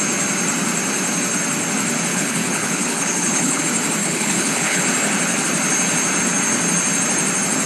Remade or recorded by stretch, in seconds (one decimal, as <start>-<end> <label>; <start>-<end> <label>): 0.0-2.1 recorded; 2.1-3.6 remade; 3.6-4.0 recorded; 4.0-4.8 remade; 4.8-7.7 recorded